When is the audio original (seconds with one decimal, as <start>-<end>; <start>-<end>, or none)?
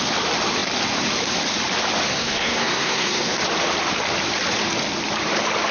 0.0-2.1; 3.4-5.7